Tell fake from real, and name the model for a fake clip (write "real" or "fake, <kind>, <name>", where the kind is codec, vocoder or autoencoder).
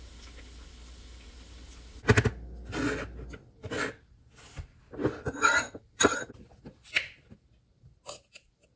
real